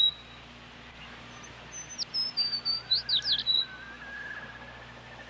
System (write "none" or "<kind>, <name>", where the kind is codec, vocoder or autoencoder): none